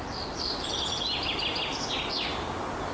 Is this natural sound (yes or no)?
yes